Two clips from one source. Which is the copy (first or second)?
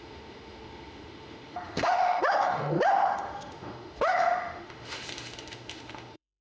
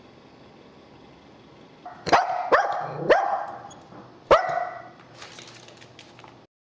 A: first